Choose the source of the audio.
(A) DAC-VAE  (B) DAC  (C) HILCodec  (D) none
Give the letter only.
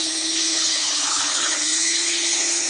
C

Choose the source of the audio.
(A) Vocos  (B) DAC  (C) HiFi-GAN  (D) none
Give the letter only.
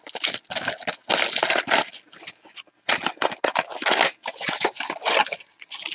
D